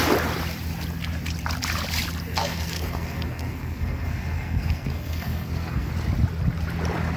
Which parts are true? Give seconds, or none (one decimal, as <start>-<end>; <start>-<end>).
0.0-2.4; 5.9-7.2

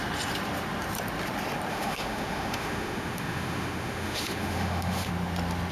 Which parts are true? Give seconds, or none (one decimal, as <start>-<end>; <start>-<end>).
0.0-1.7; 5.1-5.7

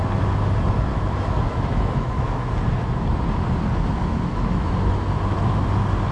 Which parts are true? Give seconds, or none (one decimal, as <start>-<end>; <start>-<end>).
0.0-0.9; 2.5-4.0; 4.7-6.1

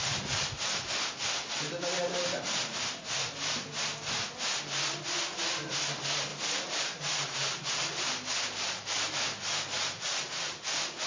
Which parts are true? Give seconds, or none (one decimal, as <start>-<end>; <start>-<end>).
0.0-11.1

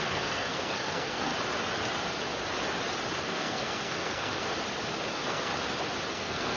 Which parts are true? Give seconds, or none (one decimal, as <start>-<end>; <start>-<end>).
1.3-3.2; 4.5-5.1; 5.5-6.1

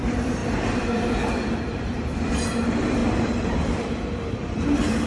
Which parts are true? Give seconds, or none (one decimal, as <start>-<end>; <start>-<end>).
3.0-3.5